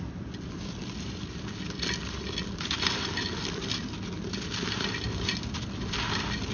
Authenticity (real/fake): real